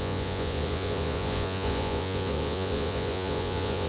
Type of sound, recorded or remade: remade